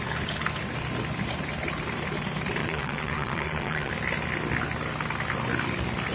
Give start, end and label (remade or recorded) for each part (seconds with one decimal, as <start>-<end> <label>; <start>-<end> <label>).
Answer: 0.0-2.6 recorded; 2.6-3.9 remade; 3.9-6.1 recorded